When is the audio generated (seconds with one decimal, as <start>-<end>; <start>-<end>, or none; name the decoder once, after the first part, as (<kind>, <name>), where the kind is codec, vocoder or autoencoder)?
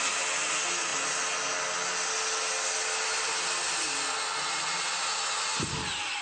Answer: none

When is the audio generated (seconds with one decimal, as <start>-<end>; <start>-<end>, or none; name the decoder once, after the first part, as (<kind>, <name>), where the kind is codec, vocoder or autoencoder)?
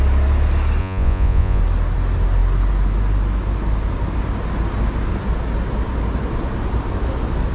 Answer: 0.8-1.6 (vocoder, Vocos)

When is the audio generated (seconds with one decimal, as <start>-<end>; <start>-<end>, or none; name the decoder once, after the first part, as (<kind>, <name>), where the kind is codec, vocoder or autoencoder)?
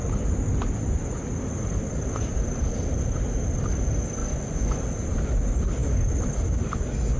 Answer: 4.2-4.8 (vocoder, Vocos)